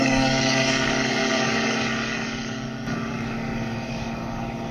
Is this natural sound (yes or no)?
no